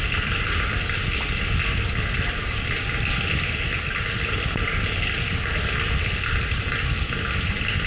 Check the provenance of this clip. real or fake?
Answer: real